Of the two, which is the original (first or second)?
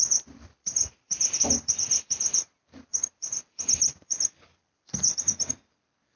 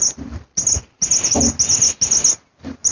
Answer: second